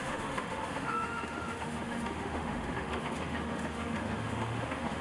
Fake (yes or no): yes